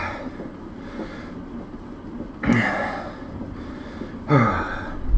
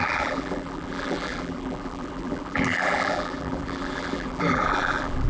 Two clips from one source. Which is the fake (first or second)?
second